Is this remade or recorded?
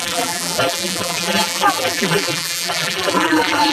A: remade